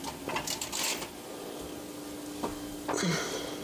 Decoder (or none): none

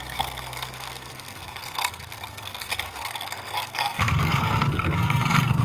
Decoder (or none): codec, SNAC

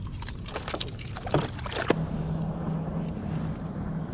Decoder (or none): none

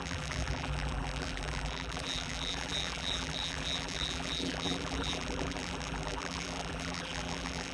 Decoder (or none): vocoder, BigVGAN v2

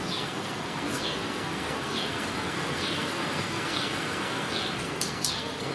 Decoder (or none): codec, SNAC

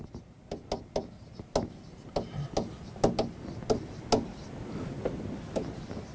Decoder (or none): none